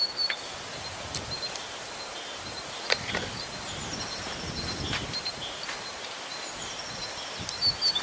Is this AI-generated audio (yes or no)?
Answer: no